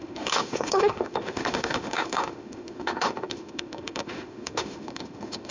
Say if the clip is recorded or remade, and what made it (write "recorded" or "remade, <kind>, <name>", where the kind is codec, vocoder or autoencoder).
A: remade, autoencoder, DAC-VAE